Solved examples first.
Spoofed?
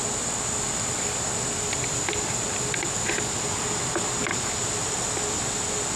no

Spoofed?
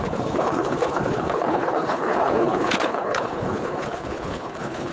yes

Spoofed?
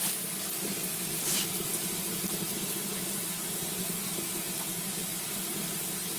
no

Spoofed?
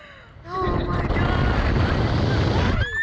no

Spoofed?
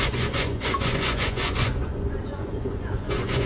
yes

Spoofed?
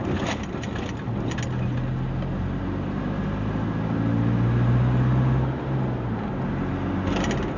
no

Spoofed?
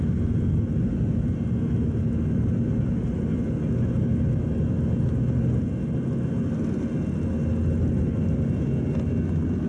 no